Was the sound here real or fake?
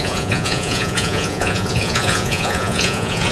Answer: fake